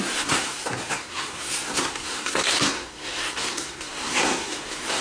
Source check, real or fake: fake